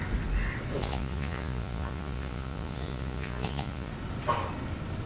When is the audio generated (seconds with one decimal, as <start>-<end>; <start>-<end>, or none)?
0.8-3.9